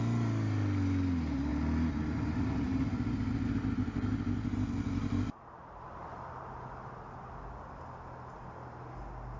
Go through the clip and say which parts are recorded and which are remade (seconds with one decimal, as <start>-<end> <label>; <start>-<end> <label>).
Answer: 0.0-9.4 recorded